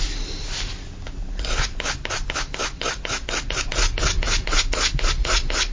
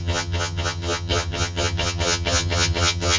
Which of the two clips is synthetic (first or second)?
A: second